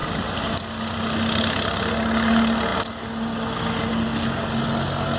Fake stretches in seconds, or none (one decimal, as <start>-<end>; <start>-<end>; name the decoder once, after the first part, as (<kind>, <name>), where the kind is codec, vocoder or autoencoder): none